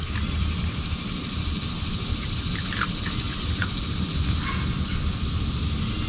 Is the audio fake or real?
real